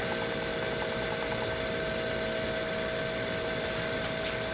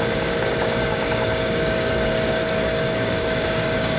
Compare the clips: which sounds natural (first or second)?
first